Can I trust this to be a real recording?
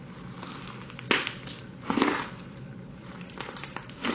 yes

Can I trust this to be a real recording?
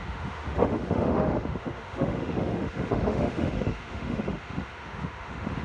no